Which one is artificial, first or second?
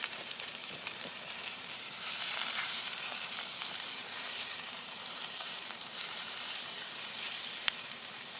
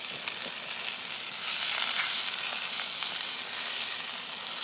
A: first